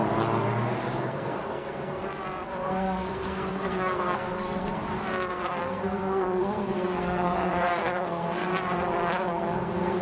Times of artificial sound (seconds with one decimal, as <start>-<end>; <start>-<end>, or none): 1.0-2.0; 2.6-4.8; 5.3-8.5; 9.3-10.0